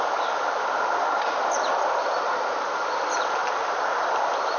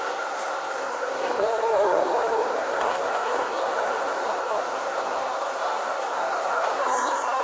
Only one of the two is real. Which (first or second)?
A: first